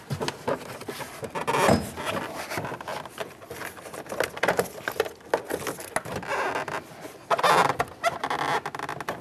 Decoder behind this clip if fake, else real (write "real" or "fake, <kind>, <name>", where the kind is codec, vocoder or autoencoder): real